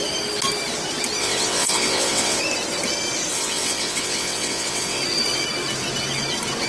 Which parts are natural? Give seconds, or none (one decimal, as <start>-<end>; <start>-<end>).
0.0-1.2; 2.4-3.3; 5.0-6.7

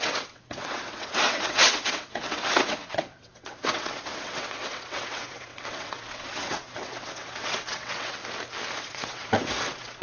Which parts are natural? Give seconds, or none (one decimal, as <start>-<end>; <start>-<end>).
8.2-8.8

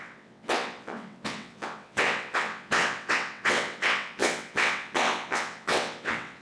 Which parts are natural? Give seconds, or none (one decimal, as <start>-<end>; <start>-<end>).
none

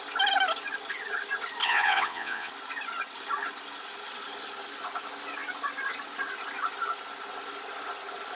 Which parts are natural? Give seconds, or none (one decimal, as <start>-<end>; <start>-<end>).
0.0-1.6; 2.5-8.3

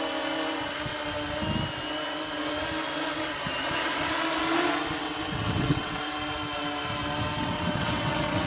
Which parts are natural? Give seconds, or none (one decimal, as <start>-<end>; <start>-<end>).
0.0-5.0; 6.0-7.4